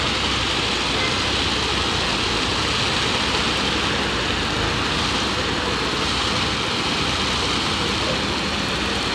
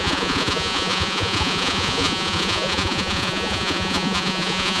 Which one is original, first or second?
first